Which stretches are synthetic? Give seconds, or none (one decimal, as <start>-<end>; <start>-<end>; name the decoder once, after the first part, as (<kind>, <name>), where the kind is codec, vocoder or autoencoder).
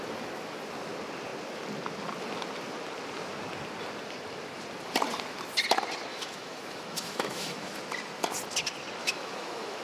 6.1-7.8 (autoencoder, DAC-VAE); 9.0-9.8